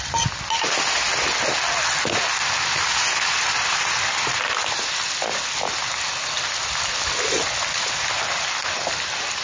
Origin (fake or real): real